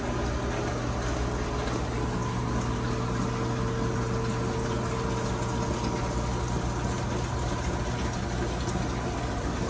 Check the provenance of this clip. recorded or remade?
recorded